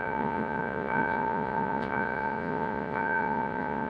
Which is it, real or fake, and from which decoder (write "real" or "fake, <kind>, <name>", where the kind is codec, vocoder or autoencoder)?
fake, vocoder, Vocos